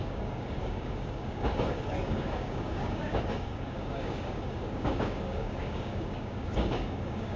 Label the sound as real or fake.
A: fake